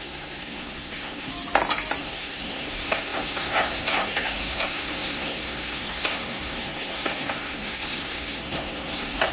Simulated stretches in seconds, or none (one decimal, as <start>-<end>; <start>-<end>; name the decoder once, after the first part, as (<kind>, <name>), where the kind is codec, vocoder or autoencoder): 0.0-1.3 (codec, SNAC); 2.0-9.3